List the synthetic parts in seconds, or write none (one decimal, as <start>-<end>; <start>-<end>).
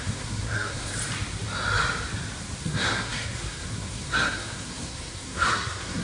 0.0-0.9; 2.6-6.0